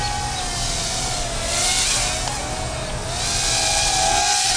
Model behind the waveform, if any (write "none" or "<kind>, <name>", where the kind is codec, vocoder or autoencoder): none